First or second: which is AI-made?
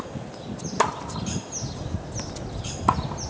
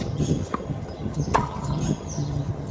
second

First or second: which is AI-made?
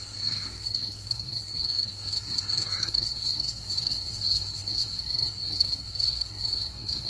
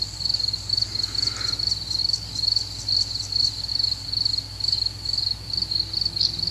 first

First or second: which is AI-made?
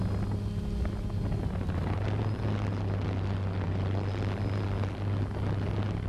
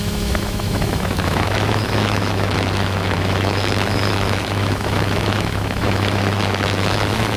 second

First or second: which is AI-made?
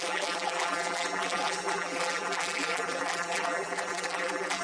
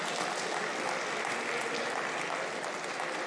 first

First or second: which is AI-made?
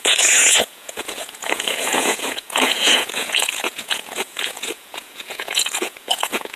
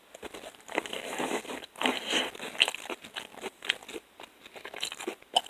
first